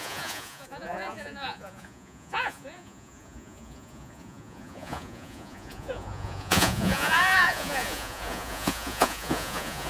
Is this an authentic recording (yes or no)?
no